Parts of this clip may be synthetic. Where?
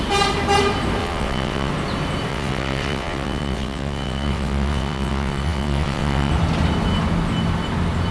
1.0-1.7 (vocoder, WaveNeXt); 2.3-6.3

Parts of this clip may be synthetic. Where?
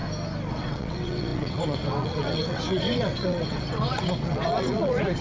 0.5-5.2 (vocoder, WaveNeXt)